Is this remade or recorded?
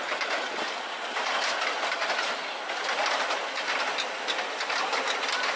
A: recorded